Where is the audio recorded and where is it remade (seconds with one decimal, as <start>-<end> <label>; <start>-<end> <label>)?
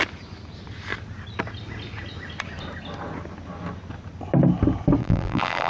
0.0-5.0 recorded; 5.0-5.7 remade